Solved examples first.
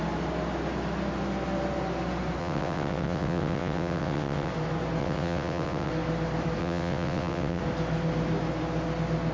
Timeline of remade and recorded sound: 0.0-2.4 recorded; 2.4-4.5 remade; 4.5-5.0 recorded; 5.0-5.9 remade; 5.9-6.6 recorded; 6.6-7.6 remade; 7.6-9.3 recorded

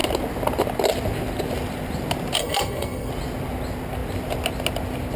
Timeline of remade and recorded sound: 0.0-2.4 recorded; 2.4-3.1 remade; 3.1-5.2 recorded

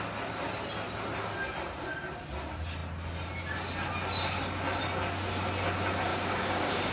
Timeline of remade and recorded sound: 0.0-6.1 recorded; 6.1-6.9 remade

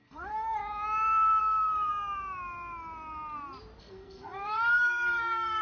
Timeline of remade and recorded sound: 0.0-0.6 remade; 0.6-1.4 recorded; 1.4-1.9 remade; 1.9-3.8 recorded; 3.8-5.6 remade

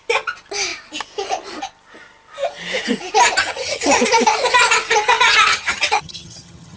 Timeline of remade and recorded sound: 0.0-3.4 recorded; 3.4-4.0 remade; 4.0-5.5 recorded; 5.5-6.8 remade